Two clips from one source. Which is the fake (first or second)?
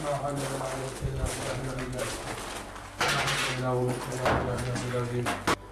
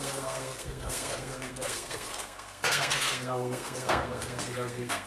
second